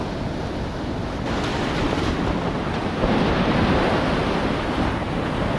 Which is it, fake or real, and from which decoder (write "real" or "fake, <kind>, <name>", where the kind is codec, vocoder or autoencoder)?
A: real